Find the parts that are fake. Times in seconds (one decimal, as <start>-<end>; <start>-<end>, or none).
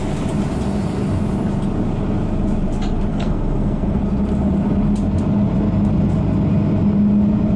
3.1-4.0